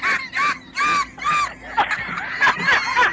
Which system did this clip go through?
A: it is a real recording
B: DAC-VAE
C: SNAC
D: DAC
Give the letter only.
A